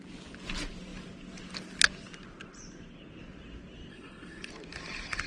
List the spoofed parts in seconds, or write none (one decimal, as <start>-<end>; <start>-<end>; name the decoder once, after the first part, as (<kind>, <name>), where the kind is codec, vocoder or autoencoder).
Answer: 3.9-4.5 (codec, HILCodec)